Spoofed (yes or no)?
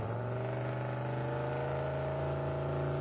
no